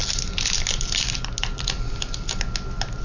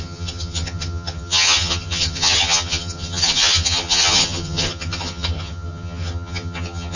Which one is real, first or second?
first